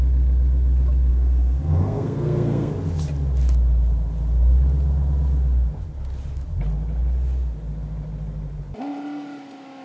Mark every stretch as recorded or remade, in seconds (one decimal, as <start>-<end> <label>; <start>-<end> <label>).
0.0-1.1 recorded; 1.1-2.7 remade; 2.7-9.8 recorded